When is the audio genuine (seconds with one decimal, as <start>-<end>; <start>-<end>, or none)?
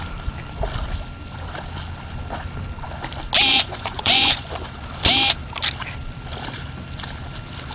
0.0-3.5; 4.5-7.7